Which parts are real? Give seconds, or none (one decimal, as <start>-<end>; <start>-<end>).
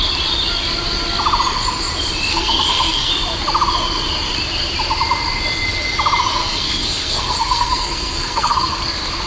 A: 0.0-2.3; 3.1-6.4; 8.8-9.3